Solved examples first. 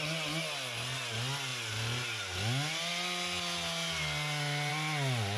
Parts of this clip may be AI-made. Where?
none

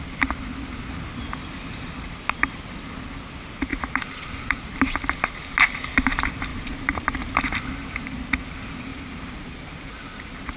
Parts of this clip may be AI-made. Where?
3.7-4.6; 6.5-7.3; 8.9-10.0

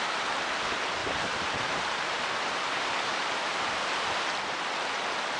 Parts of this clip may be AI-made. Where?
1.0-3.8

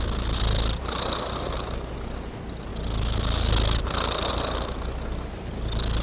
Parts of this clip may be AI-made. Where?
0.0-2.7; 4.3-6.0